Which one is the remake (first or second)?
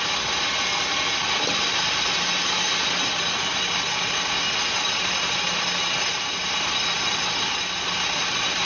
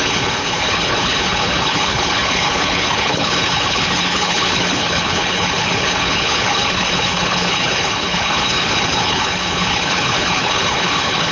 second